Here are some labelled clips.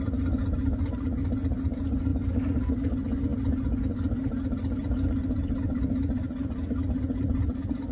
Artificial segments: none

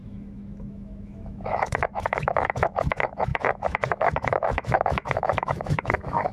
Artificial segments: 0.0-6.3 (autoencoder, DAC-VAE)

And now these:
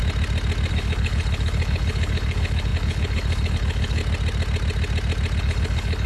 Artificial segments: 0.7-4.0 (codec, HILCodec); 5.4-6.1